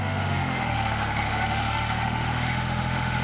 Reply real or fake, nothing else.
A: fake